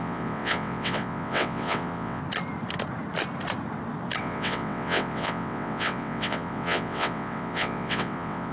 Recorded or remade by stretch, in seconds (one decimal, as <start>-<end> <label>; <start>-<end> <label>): 0.0-2.2 remade; 2.2-4.2 recorded; 4.2-8.5 remade